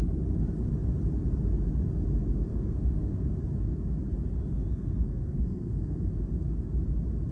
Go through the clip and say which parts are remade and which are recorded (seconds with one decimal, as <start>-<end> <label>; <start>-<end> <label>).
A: 0.0-2.5 recorded; 2.5-3.4 remade; 3.4-4.7 recorded; 4.7-6.1 remade; 6.1-7.3 recorded